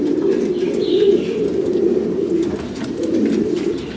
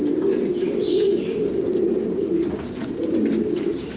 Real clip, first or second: second